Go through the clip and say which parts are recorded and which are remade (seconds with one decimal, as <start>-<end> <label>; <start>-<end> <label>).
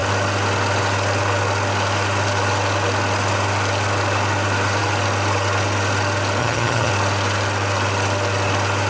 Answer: 0.0-6.4 recorded; 6.4-6.9 remade; 6.9-8.9 recorded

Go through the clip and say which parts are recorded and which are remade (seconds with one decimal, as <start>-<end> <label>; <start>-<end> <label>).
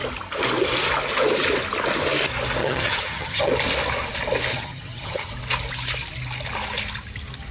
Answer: 0.0-2.6 recorded; 2.6-3.5 remade; 3.5-4.5 recorded; 4.5-5.3 remade; 5.3-7.5 recorded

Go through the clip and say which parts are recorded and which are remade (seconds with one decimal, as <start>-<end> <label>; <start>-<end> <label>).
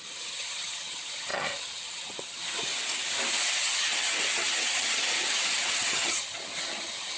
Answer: 0.0-2.7 remade; 2.7-3.6 recorded; 3.6-7.2 remade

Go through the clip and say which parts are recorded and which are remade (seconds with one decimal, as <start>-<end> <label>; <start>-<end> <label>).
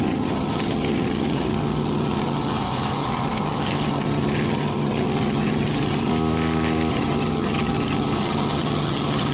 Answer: 0.0-6.1 remade; 6.1-6.9 recorded; 6.9-9.3 remade